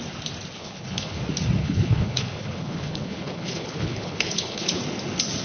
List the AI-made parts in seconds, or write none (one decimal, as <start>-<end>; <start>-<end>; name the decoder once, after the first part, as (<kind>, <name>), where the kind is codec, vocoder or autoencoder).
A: 0.6-1.2 (codec, HILCodec); 1.6-4.8